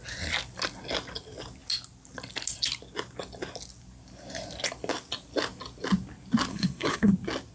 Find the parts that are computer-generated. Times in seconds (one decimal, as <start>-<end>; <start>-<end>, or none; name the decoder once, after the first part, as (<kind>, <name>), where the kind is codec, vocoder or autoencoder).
6.5-7.1 (codec, SNAC)